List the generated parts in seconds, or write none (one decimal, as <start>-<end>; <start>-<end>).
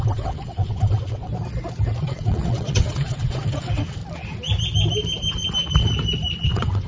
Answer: 0.0-1.3; 2.0-4.0; 6.4-6.9